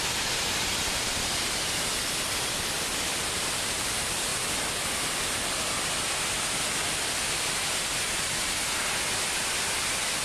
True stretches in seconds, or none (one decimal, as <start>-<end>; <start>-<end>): 0.0-10.2